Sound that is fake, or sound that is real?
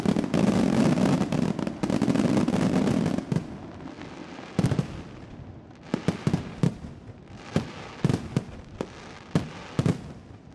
real